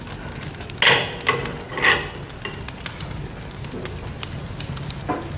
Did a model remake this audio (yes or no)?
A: no